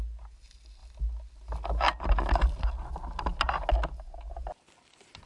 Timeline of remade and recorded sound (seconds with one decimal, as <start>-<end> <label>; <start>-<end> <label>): 0.0-5.3 recorded